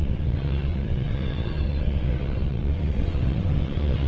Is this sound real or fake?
fake